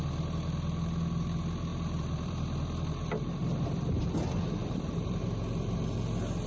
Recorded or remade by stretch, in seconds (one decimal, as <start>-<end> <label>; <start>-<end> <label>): 0.0-1.7 recorded; 1.7-4.0 remade; 4.0-4.6 recorded; 4.6-5.2 remade; 5.2-6.5 recorded